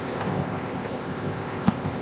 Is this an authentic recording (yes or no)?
no